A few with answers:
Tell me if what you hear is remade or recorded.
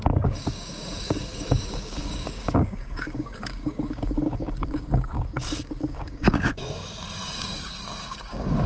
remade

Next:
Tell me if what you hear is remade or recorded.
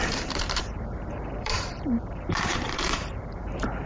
remade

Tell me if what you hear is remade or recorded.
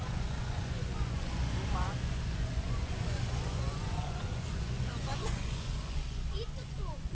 remade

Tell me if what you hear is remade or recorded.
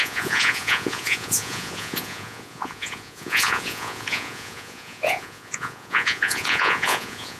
remade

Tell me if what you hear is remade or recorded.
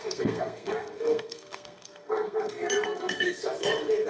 remade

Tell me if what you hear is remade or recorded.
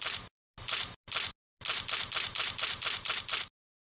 recorded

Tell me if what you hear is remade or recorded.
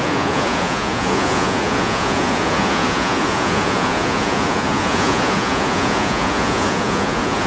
remade